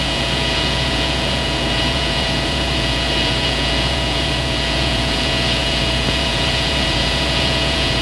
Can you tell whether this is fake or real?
fake